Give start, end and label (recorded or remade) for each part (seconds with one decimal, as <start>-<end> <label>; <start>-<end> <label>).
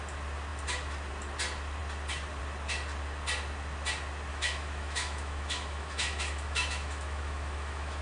0.0-4.3 recorded; 4.3-8.0 remade